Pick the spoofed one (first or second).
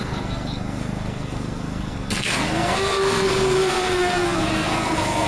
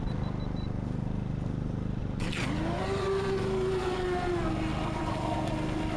first